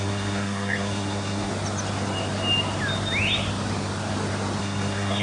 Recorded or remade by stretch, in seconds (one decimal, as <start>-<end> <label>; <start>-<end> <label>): 0.0-1.5 remade; 1.5-4.6 recorded; 4.6-5.2 remade